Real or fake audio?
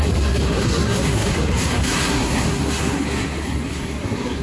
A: fake